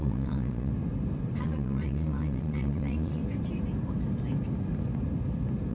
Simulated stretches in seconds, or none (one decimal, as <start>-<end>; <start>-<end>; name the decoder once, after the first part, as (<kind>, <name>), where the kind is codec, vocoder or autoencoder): 0.0-0.7 (vocoder, Vocos); 1.4-3.2